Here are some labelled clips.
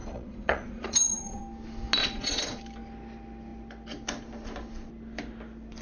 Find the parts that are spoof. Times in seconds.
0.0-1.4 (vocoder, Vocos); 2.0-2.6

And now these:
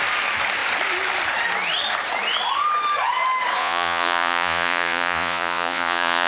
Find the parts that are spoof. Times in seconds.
3.6-6.3 (vocoder, Vocos)